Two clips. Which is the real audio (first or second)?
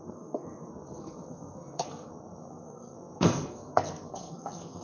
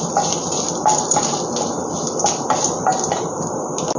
second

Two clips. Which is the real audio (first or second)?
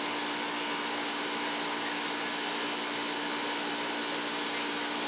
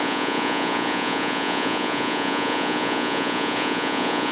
first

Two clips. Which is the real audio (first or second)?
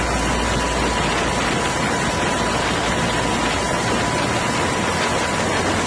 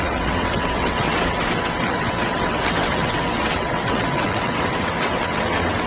first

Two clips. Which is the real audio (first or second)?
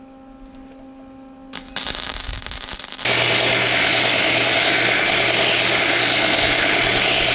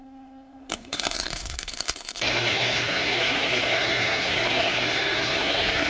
first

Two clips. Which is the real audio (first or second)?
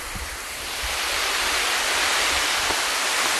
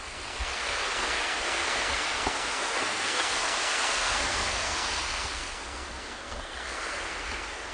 first